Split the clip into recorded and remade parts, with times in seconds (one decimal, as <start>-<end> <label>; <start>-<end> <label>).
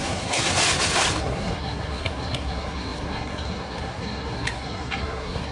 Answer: 0.0-0.5 remade; 0.5-1.2 recorded; 1.2-5.5 remade